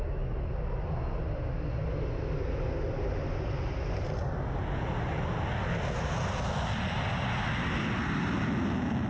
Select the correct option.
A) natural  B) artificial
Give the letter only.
A